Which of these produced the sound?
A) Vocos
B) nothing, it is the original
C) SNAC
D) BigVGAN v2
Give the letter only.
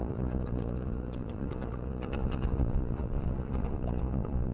A